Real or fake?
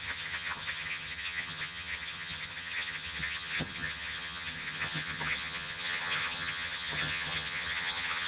fake